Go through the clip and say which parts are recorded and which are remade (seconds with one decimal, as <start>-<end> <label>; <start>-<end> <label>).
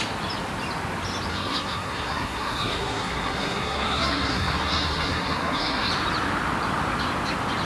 0.0-1.3 recorded; 1.3-5.9 remade; 5.9-7.6 recorded